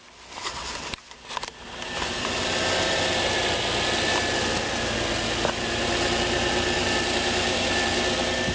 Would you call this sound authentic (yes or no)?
yes